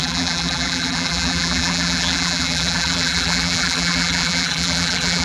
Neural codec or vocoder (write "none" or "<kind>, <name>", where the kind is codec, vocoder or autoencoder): vocoder, BigVGAN v2